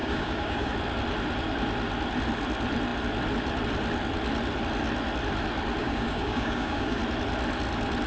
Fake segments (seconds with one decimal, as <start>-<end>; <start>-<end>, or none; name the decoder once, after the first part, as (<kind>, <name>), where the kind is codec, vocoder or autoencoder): 0.0-0.7 (codec, DAC); 5.8-7.0